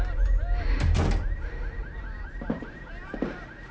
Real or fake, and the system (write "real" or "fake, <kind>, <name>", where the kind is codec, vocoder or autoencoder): real